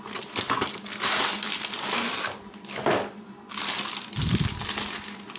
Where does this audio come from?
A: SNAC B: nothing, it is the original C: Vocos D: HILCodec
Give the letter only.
B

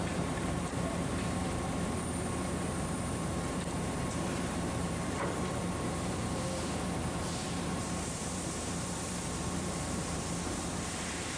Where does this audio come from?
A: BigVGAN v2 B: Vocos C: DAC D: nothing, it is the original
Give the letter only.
A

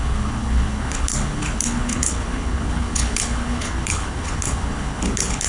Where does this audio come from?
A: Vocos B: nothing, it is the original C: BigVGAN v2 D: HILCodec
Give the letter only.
D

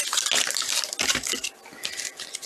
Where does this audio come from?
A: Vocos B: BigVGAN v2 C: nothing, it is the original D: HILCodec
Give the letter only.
C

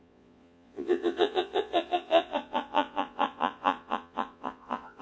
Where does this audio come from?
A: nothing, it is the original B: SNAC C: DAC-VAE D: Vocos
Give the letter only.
D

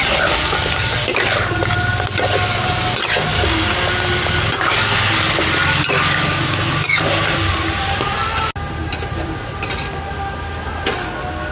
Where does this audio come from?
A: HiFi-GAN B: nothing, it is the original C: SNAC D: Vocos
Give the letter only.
B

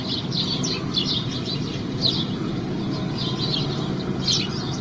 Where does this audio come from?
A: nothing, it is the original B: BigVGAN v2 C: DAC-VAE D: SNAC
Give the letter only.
B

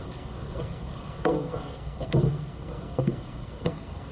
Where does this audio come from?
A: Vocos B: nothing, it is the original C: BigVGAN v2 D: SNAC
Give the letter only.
D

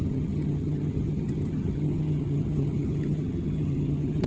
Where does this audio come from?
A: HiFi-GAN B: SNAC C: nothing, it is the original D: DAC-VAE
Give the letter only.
A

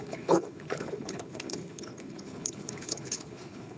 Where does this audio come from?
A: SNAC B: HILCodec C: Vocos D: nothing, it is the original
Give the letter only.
B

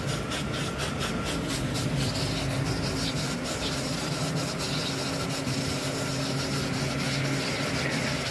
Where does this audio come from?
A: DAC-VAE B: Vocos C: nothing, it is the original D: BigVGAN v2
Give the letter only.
C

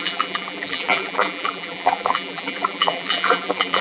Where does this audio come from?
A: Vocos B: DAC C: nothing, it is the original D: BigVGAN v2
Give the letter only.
D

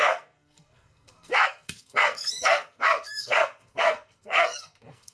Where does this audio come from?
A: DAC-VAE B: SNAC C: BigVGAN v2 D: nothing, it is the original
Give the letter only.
B